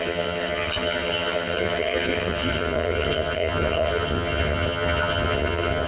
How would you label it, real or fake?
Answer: fake